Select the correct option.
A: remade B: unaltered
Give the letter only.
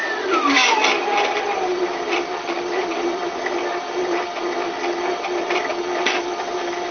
A